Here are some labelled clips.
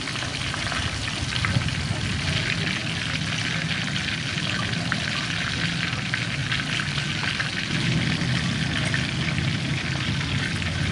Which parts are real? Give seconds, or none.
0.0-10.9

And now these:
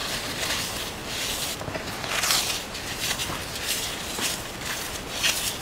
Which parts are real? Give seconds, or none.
0.0-5.6

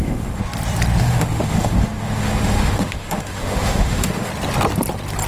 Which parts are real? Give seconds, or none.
0.4-1.0; 4.3-5.3